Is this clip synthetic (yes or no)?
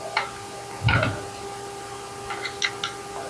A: no